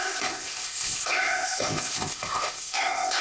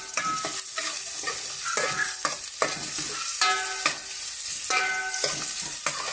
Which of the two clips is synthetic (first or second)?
first